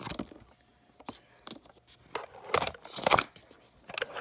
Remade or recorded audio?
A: recorded